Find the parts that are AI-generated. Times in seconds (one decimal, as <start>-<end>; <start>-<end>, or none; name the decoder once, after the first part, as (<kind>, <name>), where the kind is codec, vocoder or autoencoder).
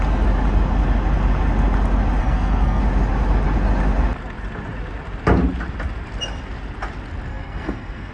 2.2-2.8 (codec, SNAC); 7.3-8.1